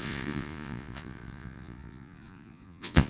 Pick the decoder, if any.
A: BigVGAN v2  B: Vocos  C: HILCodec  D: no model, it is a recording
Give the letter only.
B